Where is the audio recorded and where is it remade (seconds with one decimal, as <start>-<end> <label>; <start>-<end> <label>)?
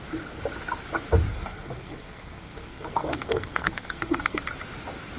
0.0-1.3 recorded; 1.3-4.4 remade; 4.4-5.2 recorded